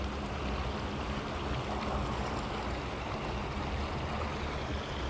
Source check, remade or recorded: recorded